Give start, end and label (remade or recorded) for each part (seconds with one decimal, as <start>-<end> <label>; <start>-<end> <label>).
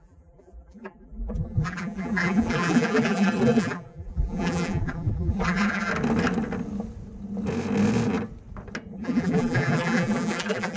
0.0-5.9 remade; 5.9-8.9 recorded; 8.9-10.8 remade